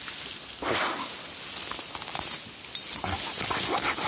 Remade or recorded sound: recorded